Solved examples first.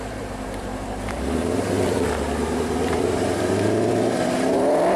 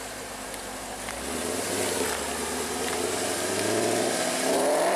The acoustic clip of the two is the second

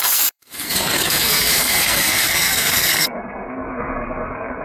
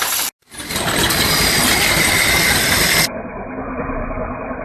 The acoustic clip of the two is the second